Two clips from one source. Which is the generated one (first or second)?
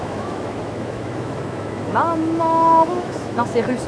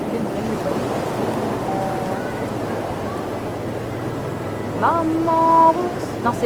first